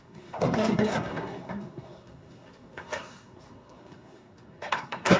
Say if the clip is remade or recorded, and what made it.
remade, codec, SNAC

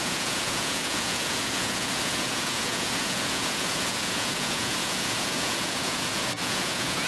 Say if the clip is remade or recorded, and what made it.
remade, vocoder, Vocos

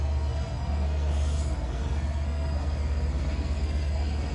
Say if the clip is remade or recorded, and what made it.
remade, codec, SNAC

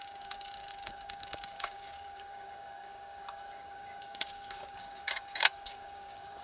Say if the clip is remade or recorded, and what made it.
remade, codec, DAC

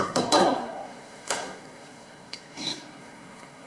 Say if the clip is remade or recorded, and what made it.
remade, codec, SNAC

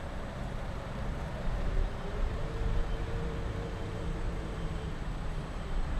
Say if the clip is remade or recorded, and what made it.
remade, vocoder, BigVGAN v2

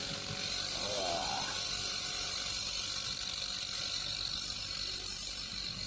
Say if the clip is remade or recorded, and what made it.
recorded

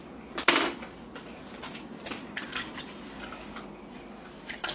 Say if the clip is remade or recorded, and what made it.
recorded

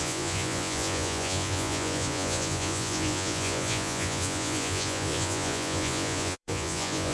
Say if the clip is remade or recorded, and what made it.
remade, vocoder, Vocos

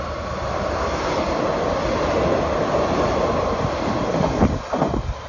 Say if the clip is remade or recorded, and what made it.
recorded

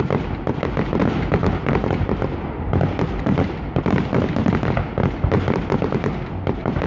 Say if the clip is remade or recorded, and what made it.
recorded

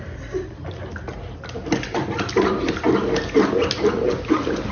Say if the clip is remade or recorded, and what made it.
recorded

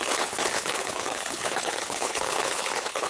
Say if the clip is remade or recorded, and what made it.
remade, codec, HILCodec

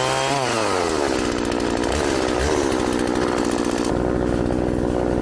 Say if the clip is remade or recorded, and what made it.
recorded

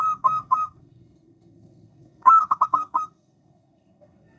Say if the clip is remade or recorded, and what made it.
remade, codec, SNAC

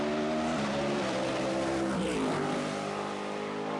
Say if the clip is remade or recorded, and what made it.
recorded